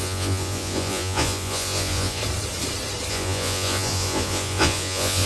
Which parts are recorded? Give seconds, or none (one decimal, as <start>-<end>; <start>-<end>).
2.2-3.1